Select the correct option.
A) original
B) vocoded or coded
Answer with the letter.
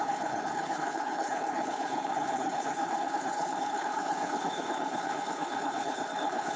B